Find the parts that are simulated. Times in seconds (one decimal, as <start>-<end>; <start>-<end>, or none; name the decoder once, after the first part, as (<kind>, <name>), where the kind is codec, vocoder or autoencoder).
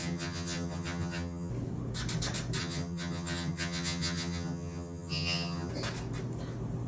0.0-1.5 (vocoder, HiFi-GAN); 2.6-5.7